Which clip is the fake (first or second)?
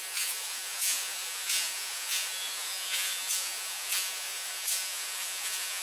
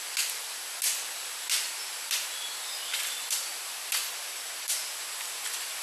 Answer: first